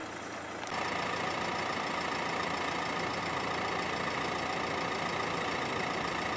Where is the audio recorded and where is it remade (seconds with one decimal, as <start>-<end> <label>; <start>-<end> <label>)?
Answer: 0.0-6.4 recorded